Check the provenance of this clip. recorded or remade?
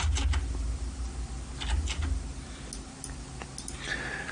recorded